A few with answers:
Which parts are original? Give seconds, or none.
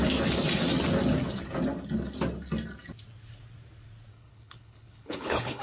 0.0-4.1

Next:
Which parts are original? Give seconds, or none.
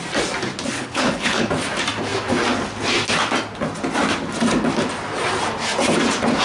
0.0-0.8; 1.5-6.4